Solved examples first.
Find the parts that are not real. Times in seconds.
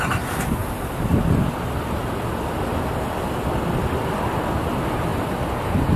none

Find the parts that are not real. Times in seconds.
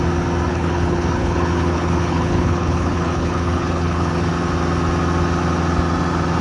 0.5-4.3 (codec, HILCodec)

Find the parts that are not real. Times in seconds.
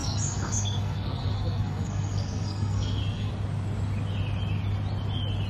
0.0-3.3 (codec, SNAC)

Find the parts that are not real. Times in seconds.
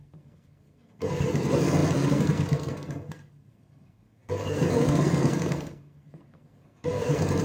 0.0-7.4 (codec, SNAC)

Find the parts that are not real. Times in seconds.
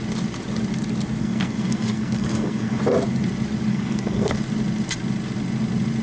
1.2-2.8 (codec, SNAC); 3.7-4.4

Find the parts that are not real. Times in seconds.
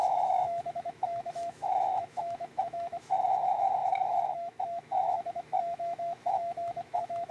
0.0-7.3 (autoencoder, DAC-VAE)